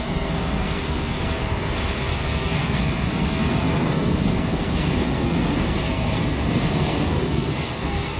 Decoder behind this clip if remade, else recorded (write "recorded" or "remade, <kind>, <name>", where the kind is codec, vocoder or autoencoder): remade, codec, SNAC